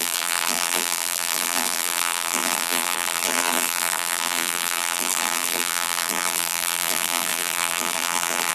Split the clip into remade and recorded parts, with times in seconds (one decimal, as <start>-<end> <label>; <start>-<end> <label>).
0.0-8.5 remade